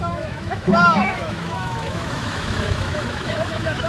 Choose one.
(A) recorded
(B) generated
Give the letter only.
B